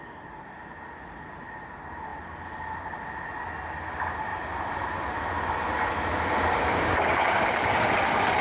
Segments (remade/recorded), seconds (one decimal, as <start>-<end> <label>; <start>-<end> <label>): 0.0-8.4 recorded